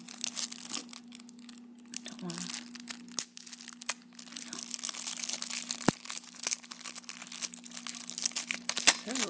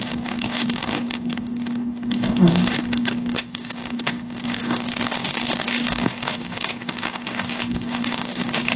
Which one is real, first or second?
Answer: first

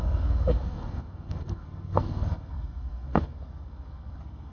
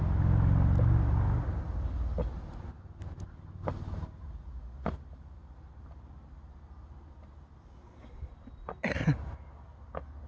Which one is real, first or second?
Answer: second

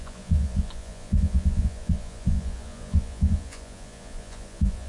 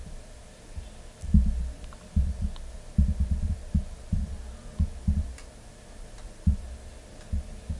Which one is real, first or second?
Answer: second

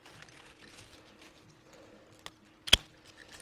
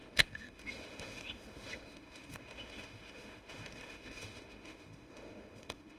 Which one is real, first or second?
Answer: first